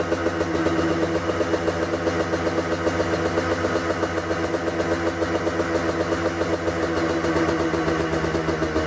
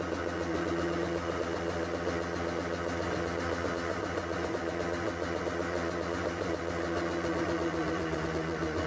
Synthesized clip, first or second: second